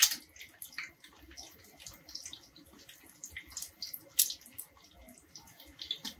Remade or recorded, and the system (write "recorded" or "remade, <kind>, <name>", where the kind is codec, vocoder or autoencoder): recorded